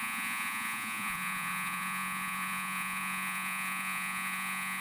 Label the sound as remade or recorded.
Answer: remade